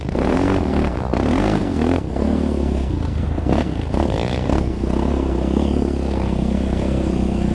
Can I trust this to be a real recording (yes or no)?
no